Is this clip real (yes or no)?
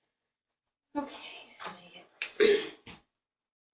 no